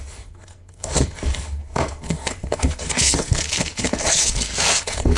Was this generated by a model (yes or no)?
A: yes